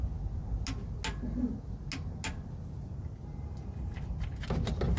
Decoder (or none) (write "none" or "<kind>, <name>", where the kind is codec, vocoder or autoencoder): none